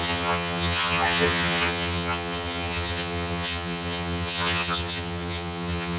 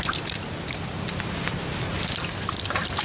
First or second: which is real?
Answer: second